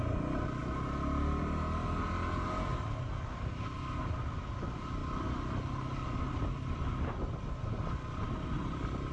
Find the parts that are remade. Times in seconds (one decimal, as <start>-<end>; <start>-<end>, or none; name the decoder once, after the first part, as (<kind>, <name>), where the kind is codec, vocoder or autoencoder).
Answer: 2.7-3.9 (vocoder, BigVGAN v2)